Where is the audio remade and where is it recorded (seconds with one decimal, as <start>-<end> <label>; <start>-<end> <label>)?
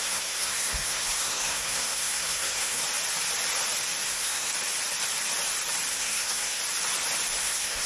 0.0-2.8 remade; 2.8-4.1 recorded; 4.1-4.5 remade; 4.5-5.9 recorded; 5.9-6.6 remade; 6.6-7.4 recorded; 7.4-7.9 remade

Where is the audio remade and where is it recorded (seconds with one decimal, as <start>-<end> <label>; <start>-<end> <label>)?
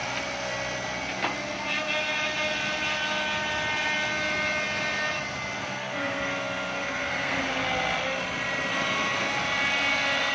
0.0-5.7 recorded; 5.7-7.4 remade; 7.4-10.3 recorded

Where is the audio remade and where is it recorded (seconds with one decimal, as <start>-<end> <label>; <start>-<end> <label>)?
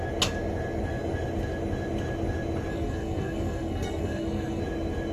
0.0-2.7 recorded; 2.7-4.6 remade; 4.6-5.1 recorded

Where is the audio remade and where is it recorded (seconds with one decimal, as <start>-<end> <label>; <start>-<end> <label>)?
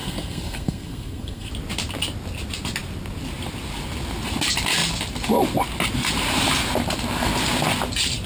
0.0-1.5 remade; 1.5-8.3 recorded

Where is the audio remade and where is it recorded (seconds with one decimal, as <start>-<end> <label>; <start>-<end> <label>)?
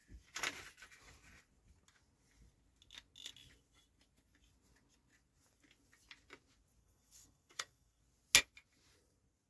0.0-6.8 recorded; 6.8-8.0 remade; 8.0-9.5 recorded